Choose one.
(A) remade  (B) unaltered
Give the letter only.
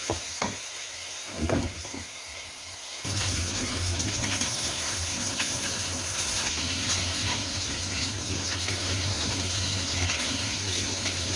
A